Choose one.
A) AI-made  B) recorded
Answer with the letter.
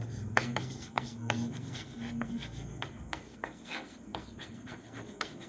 A